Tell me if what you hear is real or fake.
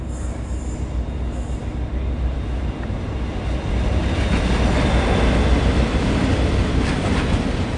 real